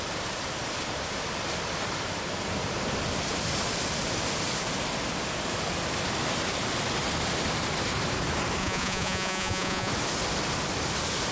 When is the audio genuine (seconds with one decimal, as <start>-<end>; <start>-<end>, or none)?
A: 0.0-8.6; 9.9-11.3